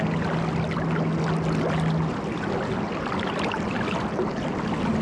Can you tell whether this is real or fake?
real